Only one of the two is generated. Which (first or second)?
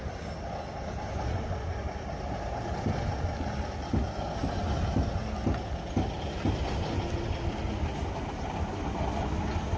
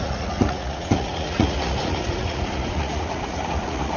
second